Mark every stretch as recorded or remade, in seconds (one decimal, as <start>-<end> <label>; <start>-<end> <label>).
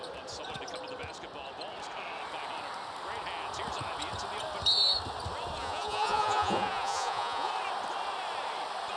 0.0-5.6 recorded; 5.6-7.5 remade; 7.5-9.0 recorded